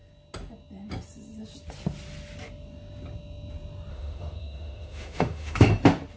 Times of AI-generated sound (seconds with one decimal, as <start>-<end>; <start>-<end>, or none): 3.9-5.7